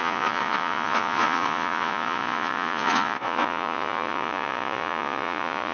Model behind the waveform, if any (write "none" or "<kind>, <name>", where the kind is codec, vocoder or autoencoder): vocoder, Vocos